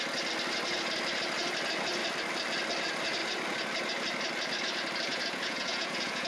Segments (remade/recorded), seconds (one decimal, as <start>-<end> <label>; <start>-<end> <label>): 0.0-5.1 recorded; 5.1-6.3 remade